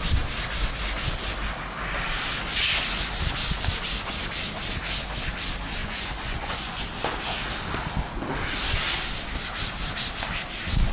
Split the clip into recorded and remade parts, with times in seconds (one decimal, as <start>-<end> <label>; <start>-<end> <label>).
0.0-5.8 recorded; 5.8-6.8 remade; 6.8-10.9 recorded